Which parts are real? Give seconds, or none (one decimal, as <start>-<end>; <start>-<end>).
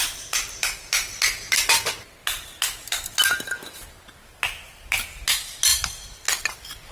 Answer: 0.0-6.9